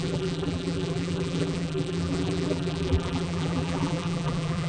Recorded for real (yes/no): no